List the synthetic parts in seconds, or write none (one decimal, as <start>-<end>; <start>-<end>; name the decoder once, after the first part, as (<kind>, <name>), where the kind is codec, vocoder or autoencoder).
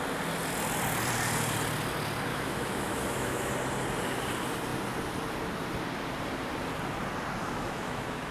2.3-3.5 (autoencoder, DAC-VAE); 7.4-8.3